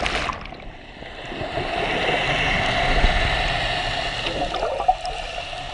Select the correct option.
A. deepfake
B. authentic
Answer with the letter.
B